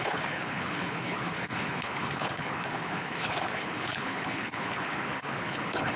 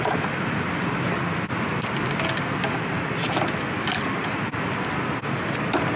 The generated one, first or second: first